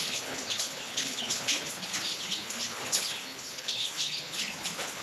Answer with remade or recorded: remade